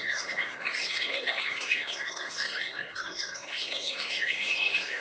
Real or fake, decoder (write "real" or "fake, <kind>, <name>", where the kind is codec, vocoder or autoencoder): fake, codec, SNAC